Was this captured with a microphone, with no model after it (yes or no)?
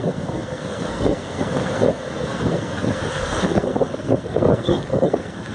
no